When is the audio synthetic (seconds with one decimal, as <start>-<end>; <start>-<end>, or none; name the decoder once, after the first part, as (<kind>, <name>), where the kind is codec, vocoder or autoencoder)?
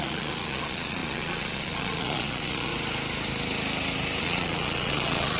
0.0-2.7 (vocoder, Vocos); 4.2-5.4